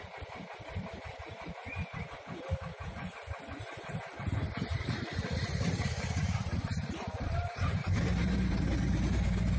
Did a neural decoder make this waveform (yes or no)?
yes